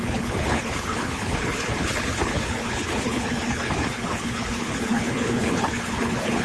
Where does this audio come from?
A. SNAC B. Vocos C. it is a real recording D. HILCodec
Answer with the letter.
D